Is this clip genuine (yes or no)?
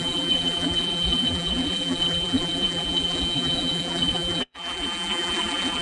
no